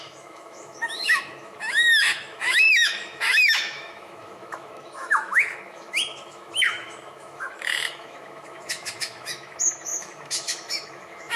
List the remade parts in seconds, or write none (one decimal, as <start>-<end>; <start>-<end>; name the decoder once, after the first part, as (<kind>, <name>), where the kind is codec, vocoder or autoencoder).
0.0-11.4 (autoencoder, DAC-VAE)